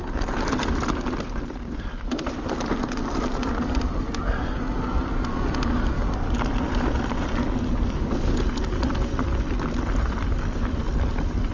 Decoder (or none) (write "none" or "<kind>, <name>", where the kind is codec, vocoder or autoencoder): none